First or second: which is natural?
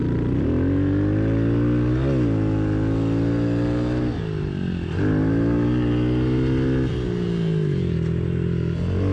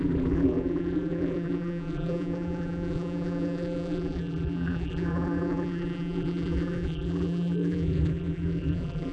first